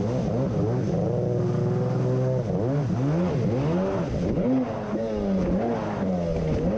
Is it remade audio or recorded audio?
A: recorded